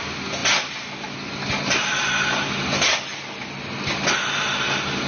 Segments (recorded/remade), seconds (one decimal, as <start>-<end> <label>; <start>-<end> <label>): 0.0-5.1 recorded